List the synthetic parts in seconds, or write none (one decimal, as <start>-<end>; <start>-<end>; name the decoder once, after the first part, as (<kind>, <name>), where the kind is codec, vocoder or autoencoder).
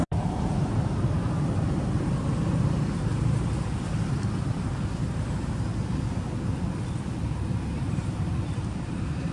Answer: 0.0-2.1 (vocoder, BigVGAN v2); 2.6-5.7; 7.3-9.3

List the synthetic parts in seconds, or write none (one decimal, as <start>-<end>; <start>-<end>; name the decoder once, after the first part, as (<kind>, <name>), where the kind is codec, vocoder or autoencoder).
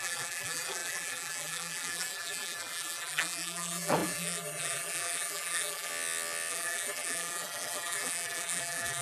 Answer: 0.0-5.9 (vocoder, BigVGAN v2); 6.5-9.0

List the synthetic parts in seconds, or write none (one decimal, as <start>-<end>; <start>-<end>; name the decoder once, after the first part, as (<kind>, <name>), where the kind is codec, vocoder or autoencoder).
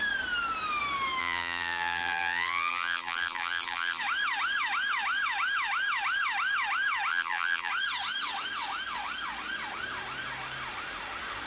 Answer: 1.2-4.0 (vocoder, BigVGAN v2); 7.1-7.7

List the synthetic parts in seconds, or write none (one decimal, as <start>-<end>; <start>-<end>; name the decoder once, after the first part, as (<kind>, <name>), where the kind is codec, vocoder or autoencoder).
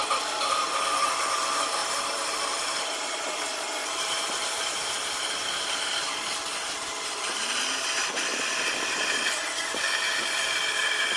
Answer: 1.8-2.7 (vocoder, BigVGAN v2); 3.8-5.6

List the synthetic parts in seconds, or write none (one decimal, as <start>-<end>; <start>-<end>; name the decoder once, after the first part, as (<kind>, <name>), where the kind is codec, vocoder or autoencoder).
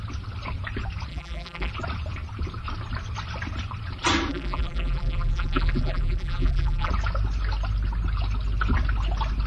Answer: 1.1-1.7 (vocoder, BigVGAN v2); 4.3-6.9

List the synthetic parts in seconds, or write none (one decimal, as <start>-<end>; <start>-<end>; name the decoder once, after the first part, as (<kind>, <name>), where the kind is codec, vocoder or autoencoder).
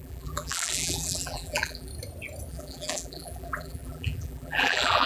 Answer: 0.0-1.9 (vocoder, BigVGAN v2); 2.5-5.1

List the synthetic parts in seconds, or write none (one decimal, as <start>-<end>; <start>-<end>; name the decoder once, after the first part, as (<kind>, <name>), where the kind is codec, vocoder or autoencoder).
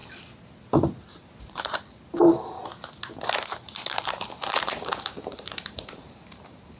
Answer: 1.4-2.6 (vocoder, BigVGAN v2); 4.0-6.8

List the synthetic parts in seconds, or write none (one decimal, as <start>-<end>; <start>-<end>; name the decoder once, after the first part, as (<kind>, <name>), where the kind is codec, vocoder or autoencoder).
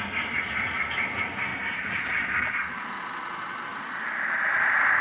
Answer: 1.5-2.9 (vocoder, BigVGAN v2); 3.7-4.4